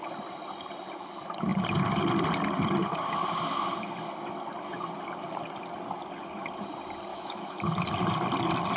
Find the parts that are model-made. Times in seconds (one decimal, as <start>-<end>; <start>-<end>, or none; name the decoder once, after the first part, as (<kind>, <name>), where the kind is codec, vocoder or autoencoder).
7.1-7.6 (autoencoder, DAC-VAE)